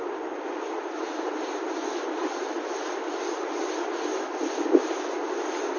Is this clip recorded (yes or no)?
yes